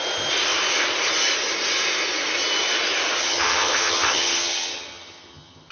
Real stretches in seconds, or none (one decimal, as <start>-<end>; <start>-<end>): 0.0-3.2